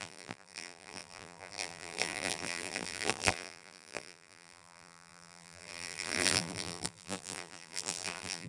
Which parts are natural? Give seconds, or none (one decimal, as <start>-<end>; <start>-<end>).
none